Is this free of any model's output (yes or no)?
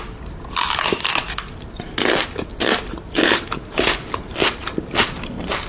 no